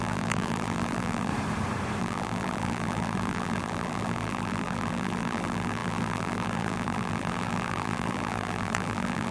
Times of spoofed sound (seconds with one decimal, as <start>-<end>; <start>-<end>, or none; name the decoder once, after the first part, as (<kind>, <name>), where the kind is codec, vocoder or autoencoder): 0.0-1.3 (vocoder, BigVGAN v2); 2.0-9.3